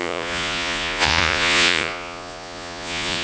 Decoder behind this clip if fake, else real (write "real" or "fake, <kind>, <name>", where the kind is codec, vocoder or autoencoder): fake, vocoder, Vocos